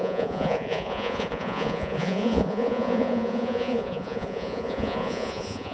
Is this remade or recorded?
remade